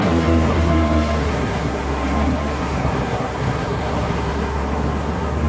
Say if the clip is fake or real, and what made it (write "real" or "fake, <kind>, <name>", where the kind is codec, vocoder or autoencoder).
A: fake, codec, SNAC